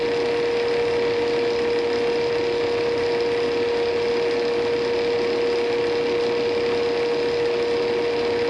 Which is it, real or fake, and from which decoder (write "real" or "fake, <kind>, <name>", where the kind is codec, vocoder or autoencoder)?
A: real